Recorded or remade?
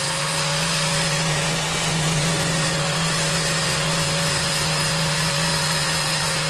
remade